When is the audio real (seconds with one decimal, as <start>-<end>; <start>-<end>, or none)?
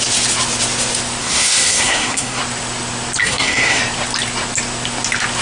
0.0-1.2; 2.4-3.2; 3.8-5.4